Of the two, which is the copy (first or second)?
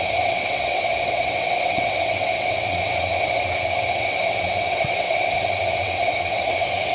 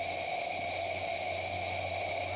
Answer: first